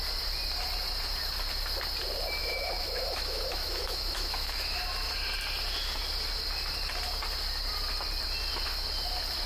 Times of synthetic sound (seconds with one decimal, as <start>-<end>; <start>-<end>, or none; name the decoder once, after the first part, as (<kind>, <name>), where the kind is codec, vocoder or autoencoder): 2.4-4.8 (autoencoder, DAC-VAE)